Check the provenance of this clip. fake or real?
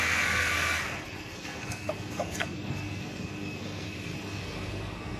fake